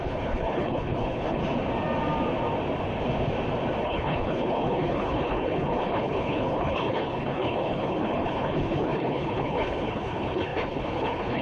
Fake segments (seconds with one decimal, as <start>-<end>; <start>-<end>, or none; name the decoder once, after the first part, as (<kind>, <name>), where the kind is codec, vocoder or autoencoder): 0.0-1.4 (codec, HILCodec); 3.8-11.4